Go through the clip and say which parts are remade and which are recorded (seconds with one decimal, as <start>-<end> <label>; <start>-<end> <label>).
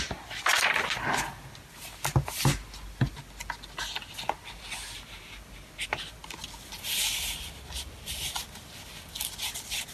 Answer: 0.0-9.9 recorded